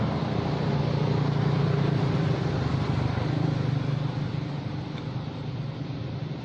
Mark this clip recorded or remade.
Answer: recorded